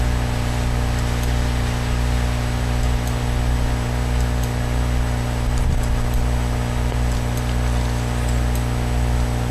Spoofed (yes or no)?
no